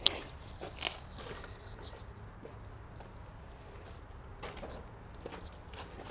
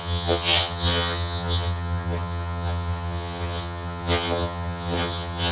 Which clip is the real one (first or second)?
first